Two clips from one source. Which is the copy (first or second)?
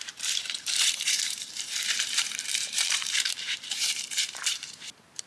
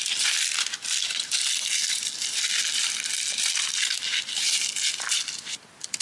first